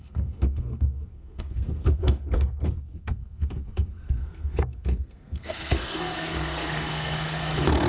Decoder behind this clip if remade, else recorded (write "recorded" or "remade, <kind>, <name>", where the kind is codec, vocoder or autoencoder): remade, codec, SNAC